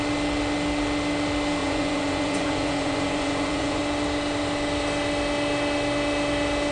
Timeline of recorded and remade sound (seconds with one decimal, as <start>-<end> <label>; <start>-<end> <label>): 0.0-1.6 recorded; 1.6-3.8 remade; 3.8-6.7 recorded